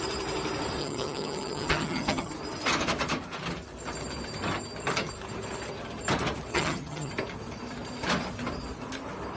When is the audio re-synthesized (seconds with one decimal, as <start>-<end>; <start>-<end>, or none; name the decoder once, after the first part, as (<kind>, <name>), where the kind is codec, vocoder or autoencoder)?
0.8-2.3 (vocoder, HiFi-GAN); 6.5-7.1